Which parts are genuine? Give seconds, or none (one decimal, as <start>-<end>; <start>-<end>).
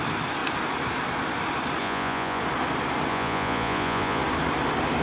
0.0-1.8; 2.4-3.1; 4.2-5.0